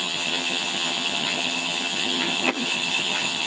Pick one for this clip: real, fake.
fake